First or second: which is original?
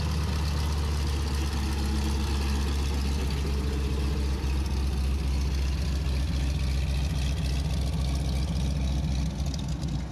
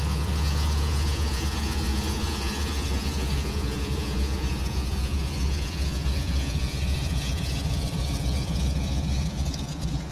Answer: first